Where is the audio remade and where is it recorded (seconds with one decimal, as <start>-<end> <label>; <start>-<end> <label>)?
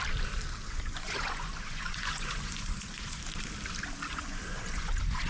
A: 0.0-0.6 recorded; 0.6-3.2 remade; 3.2-4.1 recorded; 4.1-5.3 remade